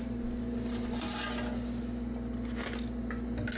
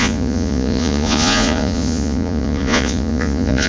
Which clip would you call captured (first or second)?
first